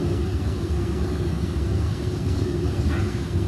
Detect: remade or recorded remade